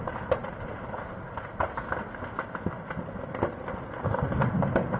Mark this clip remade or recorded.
recorded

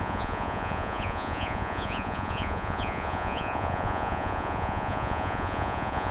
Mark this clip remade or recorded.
remade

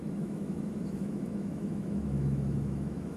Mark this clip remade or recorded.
remade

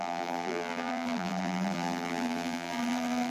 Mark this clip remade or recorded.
remade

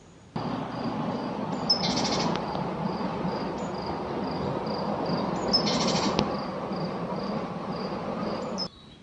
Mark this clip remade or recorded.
recorded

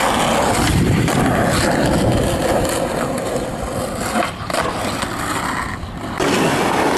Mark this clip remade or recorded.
recorded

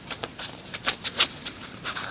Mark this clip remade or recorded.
remade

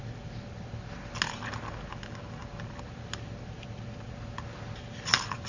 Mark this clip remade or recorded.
recorded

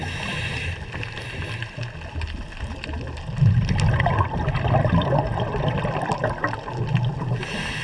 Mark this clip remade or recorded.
recorded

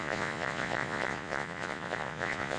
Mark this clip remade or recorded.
remade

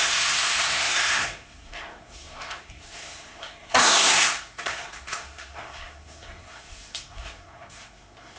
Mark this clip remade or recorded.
remade